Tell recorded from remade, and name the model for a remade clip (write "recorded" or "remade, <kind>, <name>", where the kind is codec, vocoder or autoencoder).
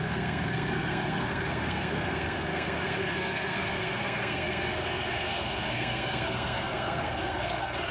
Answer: remade, codec, SNAC